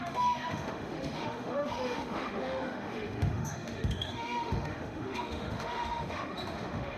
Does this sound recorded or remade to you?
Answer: remade